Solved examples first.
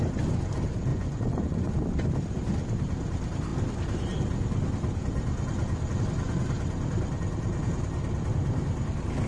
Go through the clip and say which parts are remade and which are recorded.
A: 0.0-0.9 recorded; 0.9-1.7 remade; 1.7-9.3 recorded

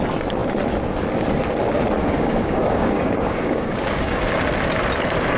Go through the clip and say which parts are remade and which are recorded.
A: 0.0-2.0 recorded; 2.0-4.2 remade; 4.2-5.4 recorded

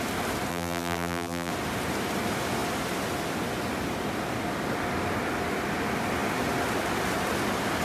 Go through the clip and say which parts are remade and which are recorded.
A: 0.0-0.5 recorded; 0.5-1.5 remade; 1.5-7.8 recorded

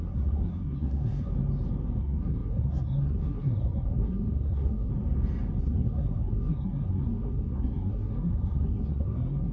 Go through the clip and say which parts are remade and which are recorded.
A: 0.0-1.3 remade; 1.3-2.0 recorded; 2.0-4.9 remade; 4.9-5.6 recorded; 5.6-9.5 remade